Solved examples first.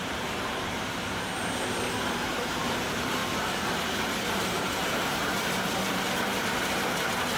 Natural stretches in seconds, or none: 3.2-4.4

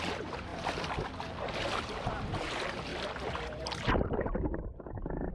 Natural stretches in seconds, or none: 0.5-1.8

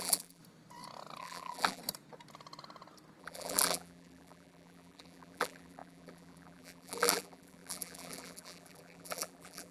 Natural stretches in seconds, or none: 0.4-1.2; 1.8-3.2

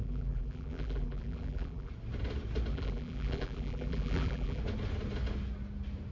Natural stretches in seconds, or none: 1.9-2.7; 4.6-6.1

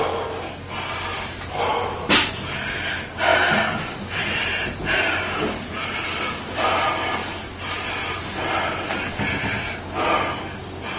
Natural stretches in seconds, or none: 0.0-1.1; 2.3-11.0

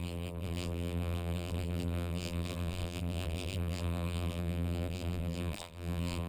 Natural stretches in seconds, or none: none

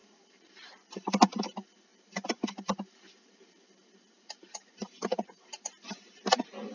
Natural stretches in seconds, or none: 1.2-1.9; 5.9-6.7